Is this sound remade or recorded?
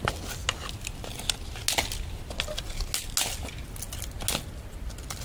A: recorded